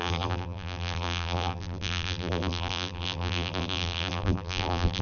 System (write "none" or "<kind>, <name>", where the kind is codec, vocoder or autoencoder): vocoder, BigVGAN v2